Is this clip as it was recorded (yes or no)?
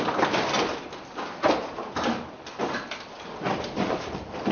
no